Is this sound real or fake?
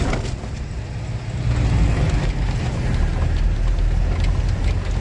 real